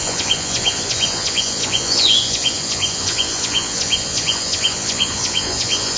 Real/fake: fake